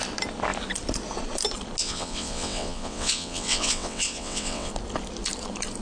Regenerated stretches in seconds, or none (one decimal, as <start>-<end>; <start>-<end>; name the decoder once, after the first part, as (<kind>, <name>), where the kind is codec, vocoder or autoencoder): 1.8-4.7 (vocoder, WaveNeXt)

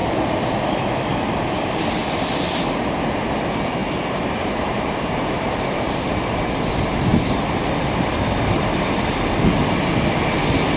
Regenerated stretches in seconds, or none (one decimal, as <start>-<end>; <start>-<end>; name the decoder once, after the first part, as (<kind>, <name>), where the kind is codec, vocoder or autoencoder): 3.8-6.2 (vocoder, BigVGAN v2)

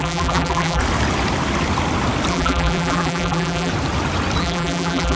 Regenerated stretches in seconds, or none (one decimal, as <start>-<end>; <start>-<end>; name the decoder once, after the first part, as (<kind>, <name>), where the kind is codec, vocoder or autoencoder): 0.0-0.8 (vocoder, BigVGAN v2); 2.3-3.7; 4.4-5.2

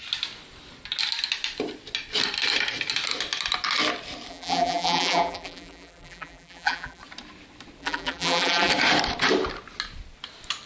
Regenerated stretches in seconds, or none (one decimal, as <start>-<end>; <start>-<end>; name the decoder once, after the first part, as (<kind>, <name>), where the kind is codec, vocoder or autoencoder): 4.3-7.0 (vocoder, BigVGAN v2); 7.8-8.7

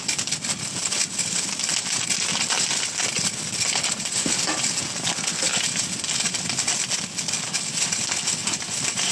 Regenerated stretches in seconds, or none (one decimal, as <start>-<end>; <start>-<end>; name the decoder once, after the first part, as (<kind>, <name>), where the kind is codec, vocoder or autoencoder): 8.4-9.1 (vocoder, BigVGAN v2)

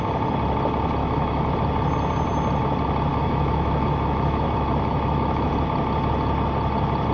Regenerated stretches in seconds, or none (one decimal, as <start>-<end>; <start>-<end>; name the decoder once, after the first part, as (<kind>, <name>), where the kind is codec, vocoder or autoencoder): 1.0-1.5 (autoencoder, DAC-VAE); 3.1-5.5

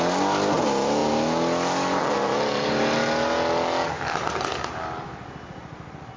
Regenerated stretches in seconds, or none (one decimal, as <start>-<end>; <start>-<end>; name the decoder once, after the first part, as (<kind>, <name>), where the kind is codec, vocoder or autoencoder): none

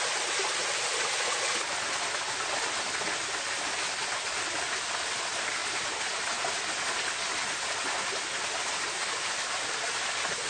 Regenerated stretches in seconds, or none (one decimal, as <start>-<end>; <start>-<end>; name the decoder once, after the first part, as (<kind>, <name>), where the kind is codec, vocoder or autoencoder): none